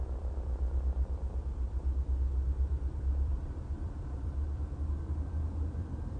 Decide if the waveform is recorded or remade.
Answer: remade